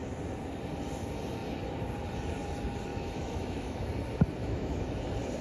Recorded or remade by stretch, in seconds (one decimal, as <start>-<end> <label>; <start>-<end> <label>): 0.0-2.9 recorded; 2.9-3.9 remade; 3.9-4.4 recorded; 4.4-5.0 remade; 5.0-5.4 recorded